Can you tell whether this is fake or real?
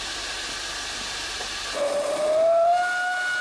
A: real